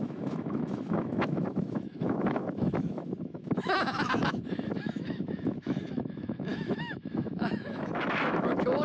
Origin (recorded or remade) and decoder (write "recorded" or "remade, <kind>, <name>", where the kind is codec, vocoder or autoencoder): remade, autoencoder, DAC-VAE